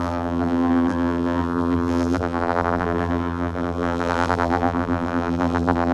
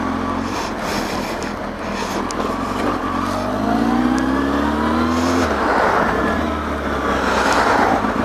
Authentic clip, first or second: second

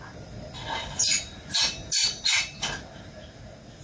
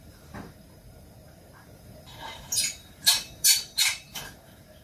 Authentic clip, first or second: first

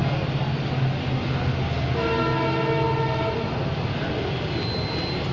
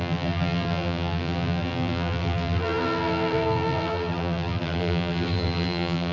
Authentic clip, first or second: first